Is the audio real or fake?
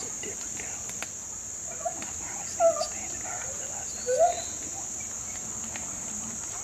real